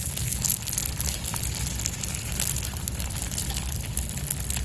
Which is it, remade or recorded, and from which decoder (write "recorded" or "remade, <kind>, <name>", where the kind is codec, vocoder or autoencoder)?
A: recorded